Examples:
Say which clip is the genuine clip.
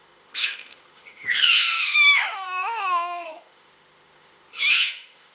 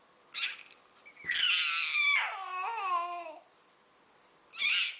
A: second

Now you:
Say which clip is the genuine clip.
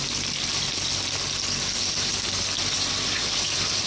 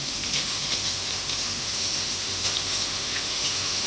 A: first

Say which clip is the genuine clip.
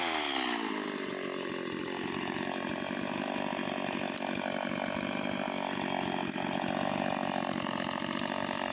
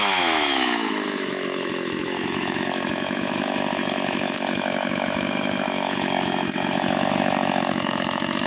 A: first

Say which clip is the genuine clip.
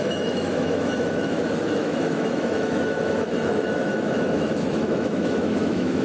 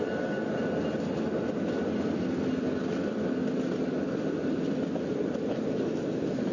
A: second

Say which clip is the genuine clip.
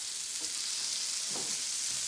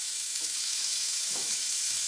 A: first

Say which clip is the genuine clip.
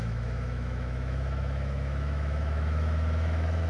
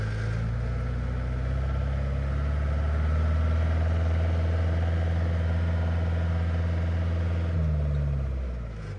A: second